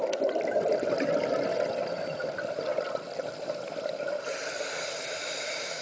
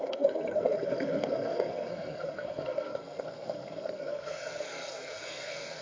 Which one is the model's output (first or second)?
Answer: second